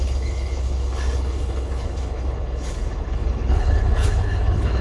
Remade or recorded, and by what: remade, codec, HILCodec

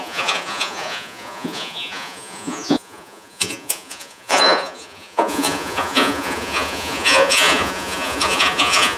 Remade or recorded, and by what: remade, vocoder, Vocos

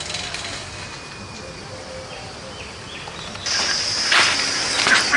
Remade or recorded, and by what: recorded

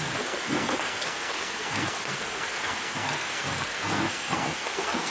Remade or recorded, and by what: remade, codec, SNAC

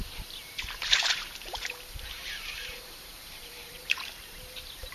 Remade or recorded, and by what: remade, vocoder, BigVGAN v2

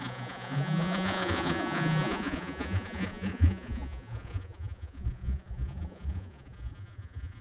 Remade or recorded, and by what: remade, vocoder, Vocos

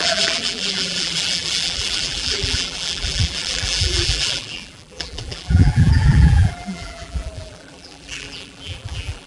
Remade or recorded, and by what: remade, vocoder, BigVGAN v2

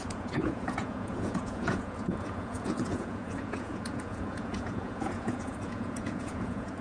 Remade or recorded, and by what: remade, vocoder, Vocos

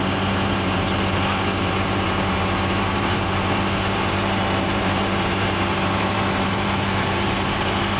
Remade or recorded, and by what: remade, vocoder, BigVGAN v2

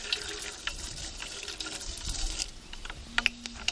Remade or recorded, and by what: recorded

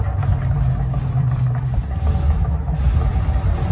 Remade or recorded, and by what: recorded